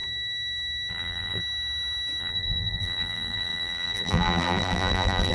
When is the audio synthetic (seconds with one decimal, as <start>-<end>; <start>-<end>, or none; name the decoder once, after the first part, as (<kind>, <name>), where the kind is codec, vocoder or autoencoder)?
0.9-1.4 (vocoder, BigVGAN v2); 2.2-5.3

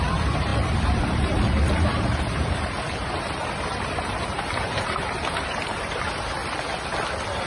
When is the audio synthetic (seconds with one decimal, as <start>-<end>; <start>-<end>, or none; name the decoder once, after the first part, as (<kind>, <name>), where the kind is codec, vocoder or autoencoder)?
0.0-6.4 (vocoder, BigVGAN v2)

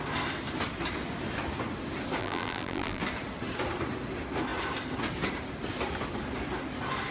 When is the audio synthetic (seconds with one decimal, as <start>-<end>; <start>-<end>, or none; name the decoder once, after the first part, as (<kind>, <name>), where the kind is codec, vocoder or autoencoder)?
2.2-3.0 (vocoder, BigVGAN v2)

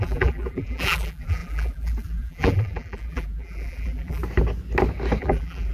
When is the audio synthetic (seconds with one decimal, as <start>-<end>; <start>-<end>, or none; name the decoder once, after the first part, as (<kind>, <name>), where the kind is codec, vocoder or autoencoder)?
0.0-4.2 (vocoder, BigVGAN v2); 5.2-5.7

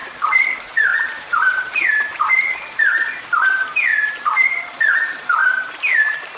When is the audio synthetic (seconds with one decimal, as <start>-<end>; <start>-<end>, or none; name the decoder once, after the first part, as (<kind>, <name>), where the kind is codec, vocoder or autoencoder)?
0.0-6.4 (vocoder, BigVGAN v2)

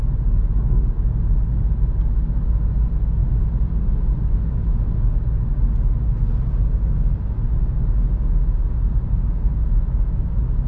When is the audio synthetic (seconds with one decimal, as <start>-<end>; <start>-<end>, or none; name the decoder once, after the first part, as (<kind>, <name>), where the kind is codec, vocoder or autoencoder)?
none

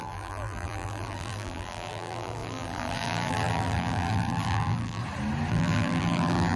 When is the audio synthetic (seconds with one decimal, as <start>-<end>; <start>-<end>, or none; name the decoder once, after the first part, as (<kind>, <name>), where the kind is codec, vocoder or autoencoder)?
0.0-5.0 (vocoder, BigVGAN v2); 5.5-6.6